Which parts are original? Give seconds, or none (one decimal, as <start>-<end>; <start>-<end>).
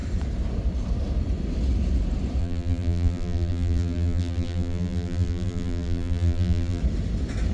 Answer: 0.0-2.4; 6.8-7.5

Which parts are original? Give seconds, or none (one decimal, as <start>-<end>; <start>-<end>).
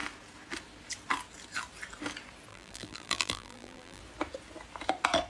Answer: 0.0-2.5; 4.0-5.3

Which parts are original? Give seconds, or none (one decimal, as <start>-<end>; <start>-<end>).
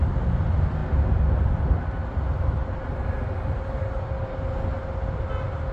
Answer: 0.0-5.7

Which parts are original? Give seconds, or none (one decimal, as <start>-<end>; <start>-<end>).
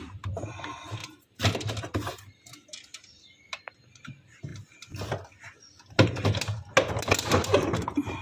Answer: 0.0-8.2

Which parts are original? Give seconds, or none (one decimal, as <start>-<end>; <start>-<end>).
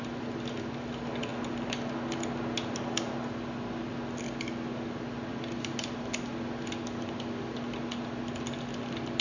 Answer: 0.0-9.2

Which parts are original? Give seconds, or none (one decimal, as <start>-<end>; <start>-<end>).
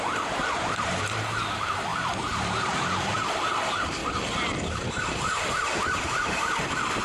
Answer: 4.0-4.8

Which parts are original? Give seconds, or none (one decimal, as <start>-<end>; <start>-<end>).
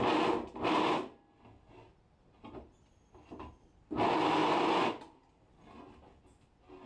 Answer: 0.0-6.9